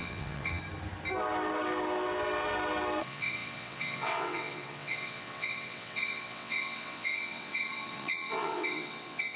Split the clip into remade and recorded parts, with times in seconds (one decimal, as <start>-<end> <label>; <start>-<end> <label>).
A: 0.0-0.6 remade; 0.6-3.0 recorded; 3.0-9.4 remade

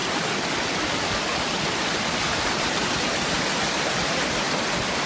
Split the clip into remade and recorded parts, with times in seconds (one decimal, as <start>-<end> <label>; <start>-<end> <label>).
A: 0.0-5.1 recorded

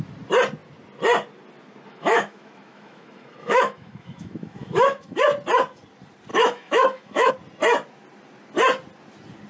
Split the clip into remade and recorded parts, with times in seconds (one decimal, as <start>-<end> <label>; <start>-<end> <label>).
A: 0.0-1.9 recorded; 1.9-5.2 remade; 5.2-6.3 recorded; 6.3-7.3 remade; 7.3-9.5 recorded

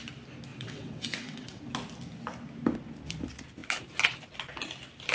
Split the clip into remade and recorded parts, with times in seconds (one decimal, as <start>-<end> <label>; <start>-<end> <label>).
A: 0.0-0.5 recorded; 0.5-1.6 remade; 1.6-5.1 recorded

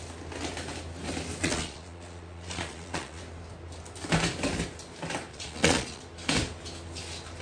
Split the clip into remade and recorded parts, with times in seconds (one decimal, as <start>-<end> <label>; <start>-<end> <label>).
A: 0.0-1.4 recorded; 1.4-3.2 remade; 3.2-5.3 recorded; 5.3-6.0 remade; 6.0-7.4 recorded

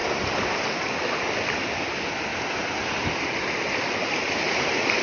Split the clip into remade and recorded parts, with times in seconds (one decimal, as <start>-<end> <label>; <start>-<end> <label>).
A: 0.0-5.0 recorded

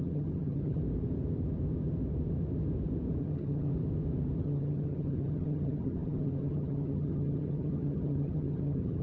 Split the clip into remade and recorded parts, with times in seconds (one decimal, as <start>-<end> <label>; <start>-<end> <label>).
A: 0.0-0.8 remade; 0.8-3.2 recorded; 3.2-3.7 remade; 3.7-4.4 recorded; 4.4-9.0 remade

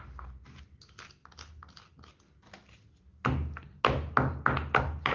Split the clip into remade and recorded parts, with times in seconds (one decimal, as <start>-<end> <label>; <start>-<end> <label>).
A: 0.0-5.1 recorded